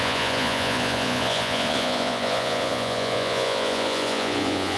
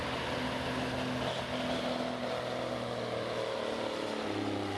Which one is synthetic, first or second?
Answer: first